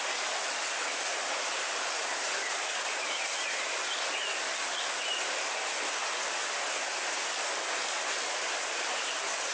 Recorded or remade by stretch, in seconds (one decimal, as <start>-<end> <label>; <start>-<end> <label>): 0.0-9.5 recorded